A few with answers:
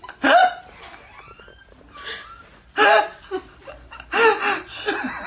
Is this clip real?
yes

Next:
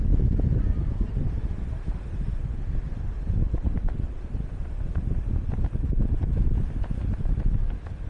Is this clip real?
yes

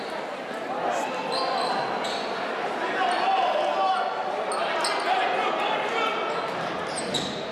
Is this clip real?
yes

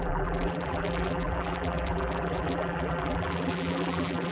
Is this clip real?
no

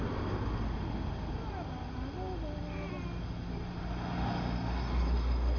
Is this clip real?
yes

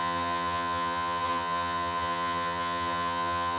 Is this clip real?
no